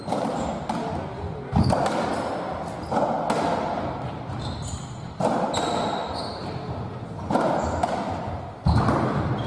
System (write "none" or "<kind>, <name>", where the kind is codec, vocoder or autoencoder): none